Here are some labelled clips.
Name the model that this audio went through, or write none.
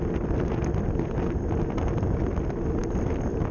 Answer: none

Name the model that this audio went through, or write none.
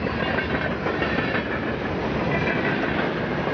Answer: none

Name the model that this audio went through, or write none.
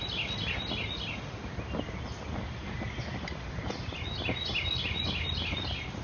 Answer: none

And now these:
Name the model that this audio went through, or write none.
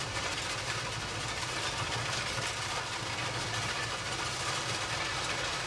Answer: none